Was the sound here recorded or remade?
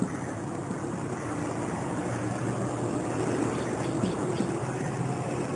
recorded